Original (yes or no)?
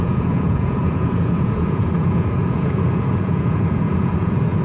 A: no